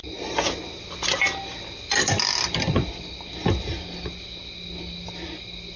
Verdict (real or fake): real